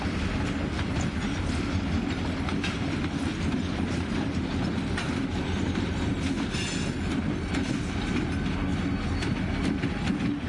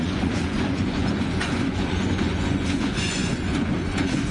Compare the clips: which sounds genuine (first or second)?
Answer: first